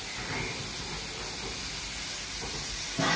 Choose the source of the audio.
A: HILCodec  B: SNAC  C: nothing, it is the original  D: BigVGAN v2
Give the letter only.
C